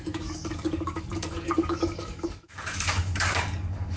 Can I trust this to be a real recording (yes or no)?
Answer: no